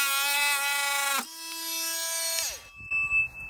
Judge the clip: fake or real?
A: real